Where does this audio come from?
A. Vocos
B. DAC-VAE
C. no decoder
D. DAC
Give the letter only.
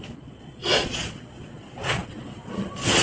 A